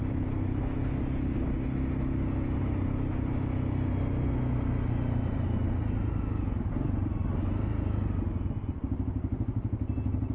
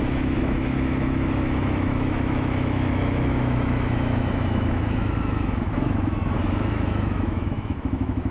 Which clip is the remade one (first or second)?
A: second